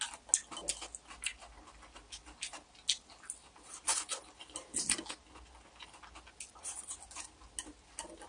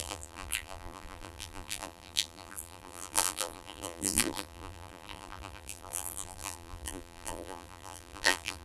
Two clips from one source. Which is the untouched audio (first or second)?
first